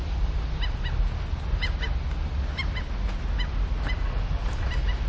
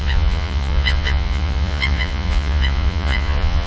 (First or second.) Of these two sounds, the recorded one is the first